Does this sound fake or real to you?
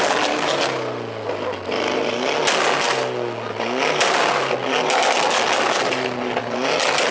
real